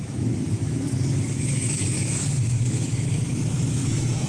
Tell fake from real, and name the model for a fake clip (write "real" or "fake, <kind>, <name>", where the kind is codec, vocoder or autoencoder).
fake, autoencoder, DAC-VAE